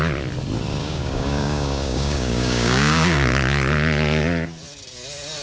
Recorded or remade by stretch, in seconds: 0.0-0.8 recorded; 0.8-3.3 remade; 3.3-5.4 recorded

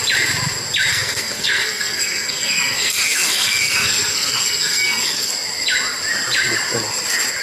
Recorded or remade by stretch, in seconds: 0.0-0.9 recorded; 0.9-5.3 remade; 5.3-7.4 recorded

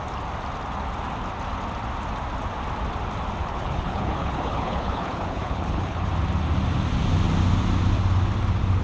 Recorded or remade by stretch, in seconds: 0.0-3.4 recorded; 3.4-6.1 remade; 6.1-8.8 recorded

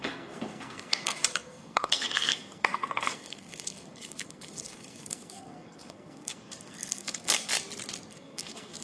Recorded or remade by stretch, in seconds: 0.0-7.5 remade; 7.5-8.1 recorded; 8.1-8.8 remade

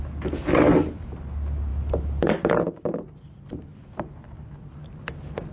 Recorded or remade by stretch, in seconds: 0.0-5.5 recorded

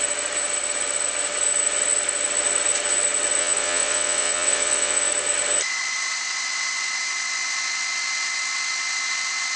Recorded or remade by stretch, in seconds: 0.0-3.4 recorded; 3.4-5.1 remade; 5.1-9.6 recorded

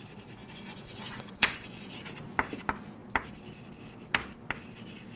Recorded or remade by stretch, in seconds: 0.0-0.4 recorded; 0.4-1.9 remade; 1.9-5.2 recorded